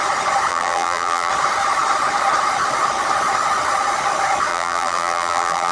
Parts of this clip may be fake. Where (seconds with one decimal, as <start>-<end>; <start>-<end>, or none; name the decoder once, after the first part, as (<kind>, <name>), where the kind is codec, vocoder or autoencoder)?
0.5-1.3 (vocoder, BigVGAN v2); 4.5-5.7